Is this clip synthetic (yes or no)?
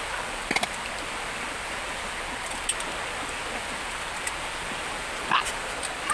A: no